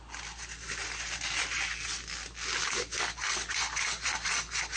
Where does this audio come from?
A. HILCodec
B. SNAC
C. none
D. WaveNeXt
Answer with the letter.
C